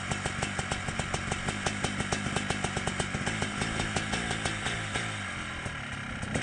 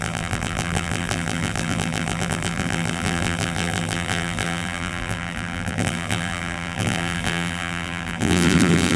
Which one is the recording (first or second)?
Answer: first